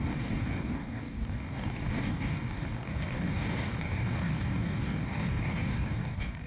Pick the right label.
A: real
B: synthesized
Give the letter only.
B